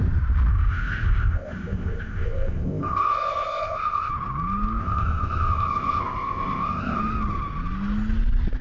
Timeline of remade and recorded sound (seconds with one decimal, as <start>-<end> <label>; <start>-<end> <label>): 0.0-0.5 recorded; 0.5-4.1 remade; 4.1-4.8 recorded; 4.8-7.0 remade; 7.0-8.6 recorded